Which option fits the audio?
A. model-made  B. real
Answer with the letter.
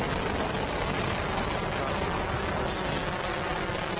B